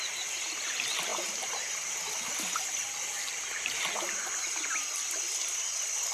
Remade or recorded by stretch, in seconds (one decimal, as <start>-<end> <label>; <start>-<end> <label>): 0.0-6.1 recorded